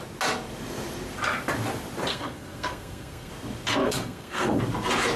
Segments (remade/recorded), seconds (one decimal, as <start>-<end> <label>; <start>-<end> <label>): 0.0-2.1 recorded; 2.1-3.3 remade; 3.3-3.8 recorded; 3.8-4.6 remade; 4.6-5.2 recorded